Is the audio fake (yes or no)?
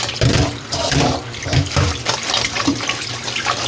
yes